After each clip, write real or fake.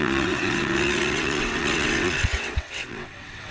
fake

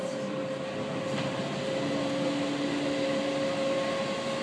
real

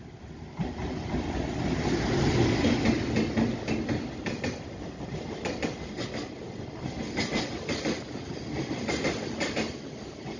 real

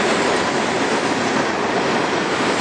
real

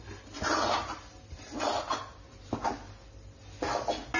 real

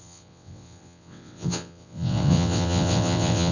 fake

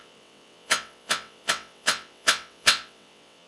fake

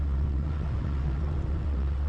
fake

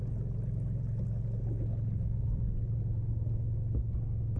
real